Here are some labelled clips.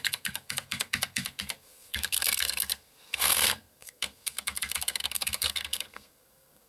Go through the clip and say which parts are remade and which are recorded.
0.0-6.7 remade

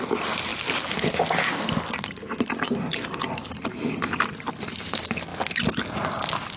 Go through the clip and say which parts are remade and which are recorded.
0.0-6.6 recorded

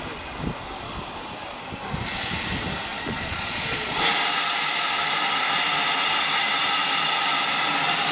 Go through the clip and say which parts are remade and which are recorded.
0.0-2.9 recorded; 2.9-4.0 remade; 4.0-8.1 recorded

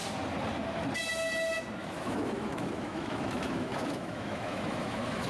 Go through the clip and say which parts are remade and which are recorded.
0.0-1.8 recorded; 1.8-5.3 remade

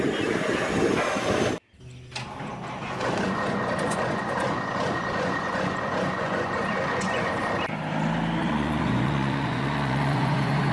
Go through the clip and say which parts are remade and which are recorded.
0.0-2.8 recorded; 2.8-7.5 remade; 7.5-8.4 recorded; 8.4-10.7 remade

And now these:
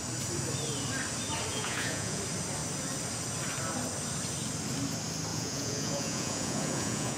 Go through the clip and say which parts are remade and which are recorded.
0.0-1.5 recorded; 1.5-2.2 remade; 2.2-5.3 recorded; 5.3-7.2 remade

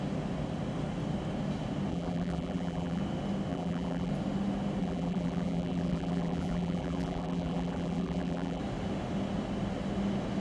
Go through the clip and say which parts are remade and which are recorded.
0.0-1.9 recorded; 1.9-3.0 remade; 3.0-3.5 recorded; 3.5-4.1 remade; 4.1-4.8 recorded; 4.8-8.6 remade; 8.6-10.4 recorded